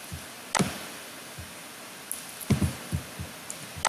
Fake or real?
real